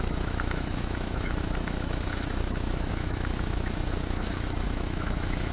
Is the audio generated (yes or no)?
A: yes